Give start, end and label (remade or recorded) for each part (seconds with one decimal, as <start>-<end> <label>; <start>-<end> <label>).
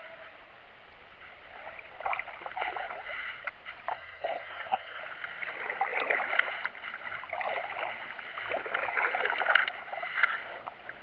0.0-3.9 recorded; 3.9-5.0 remade; 5.0-11.0 recorded